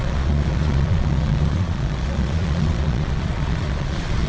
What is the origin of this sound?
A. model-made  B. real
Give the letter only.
A